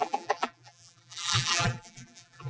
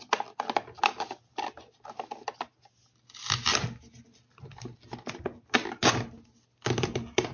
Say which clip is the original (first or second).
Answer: second